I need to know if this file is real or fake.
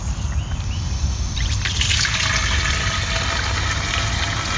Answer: real